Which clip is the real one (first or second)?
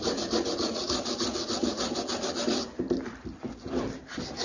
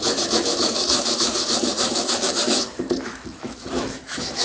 first